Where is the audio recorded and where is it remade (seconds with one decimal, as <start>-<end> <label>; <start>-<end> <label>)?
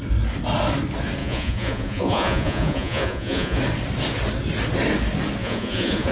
0.0-1.2 recorded; 1.2-3.6 remade; 3.6-5.4 recorded; 5.4-6.1 remade